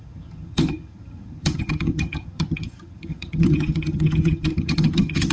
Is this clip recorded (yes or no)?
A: no